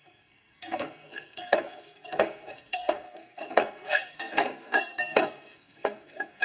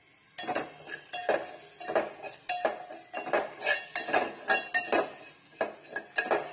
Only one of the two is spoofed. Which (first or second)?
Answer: first